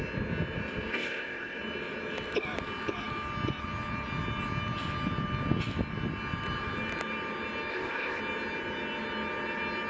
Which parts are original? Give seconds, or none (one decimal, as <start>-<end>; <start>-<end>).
0.0-0.9; 1.6-7.7; 8.2-9.9